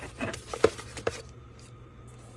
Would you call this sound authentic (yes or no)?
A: no